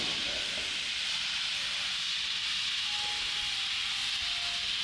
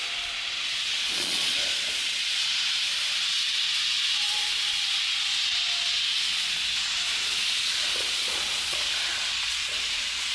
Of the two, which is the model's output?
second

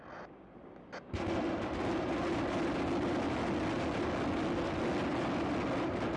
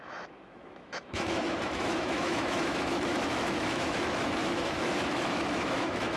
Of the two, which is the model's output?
second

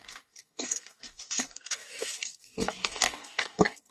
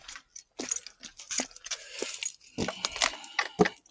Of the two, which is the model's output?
first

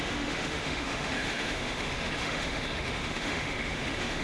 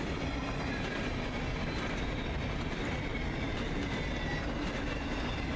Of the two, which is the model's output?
first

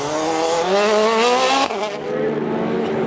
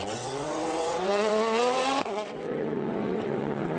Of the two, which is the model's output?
second